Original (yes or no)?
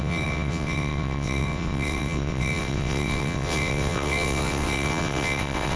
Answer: no